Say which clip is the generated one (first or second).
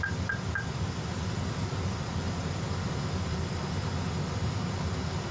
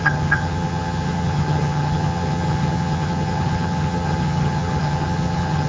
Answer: second